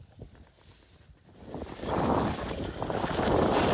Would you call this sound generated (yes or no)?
no